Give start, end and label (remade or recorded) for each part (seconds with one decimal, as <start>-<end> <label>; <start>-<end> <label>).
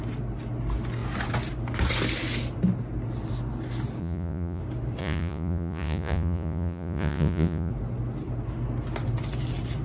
0.0-4.0 recorded; 4.0-4.6 remade; 4.6-5.0 recorded; 5.0-7.7 remade; 7.7-9.8 recorded